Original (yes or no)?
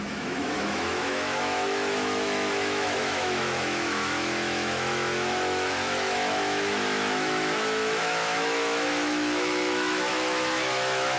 no